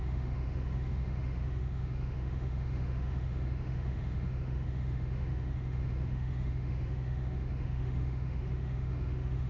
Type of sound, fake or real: fake